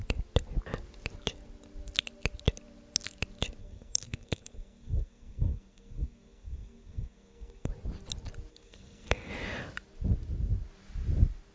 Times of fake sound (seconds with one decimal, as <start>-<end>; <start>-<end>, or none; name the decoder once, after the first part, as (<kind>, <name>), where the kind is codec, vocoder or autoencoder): 3.6-7.7 (codec, SNAC); 8.5-9.3